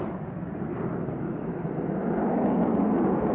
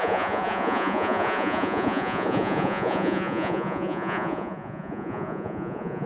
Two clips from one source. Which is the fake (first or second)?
second